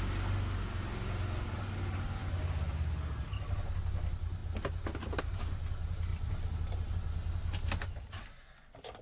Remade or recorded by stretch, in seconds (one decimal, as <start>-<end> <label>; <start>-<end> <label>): 0.0-6.1 recorded; 6.1-6.9 remade; 6.9-9.0 recorded